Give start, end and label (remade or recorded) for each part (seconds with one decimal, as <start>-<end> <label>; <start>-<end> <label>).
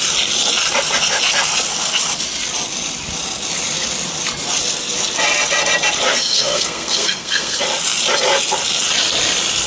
0.0-6.1 recorded; 6.1-7.6 remade; 7.6-9.7 recorded